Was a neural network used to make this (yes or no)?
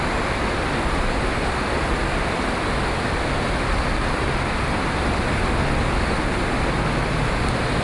no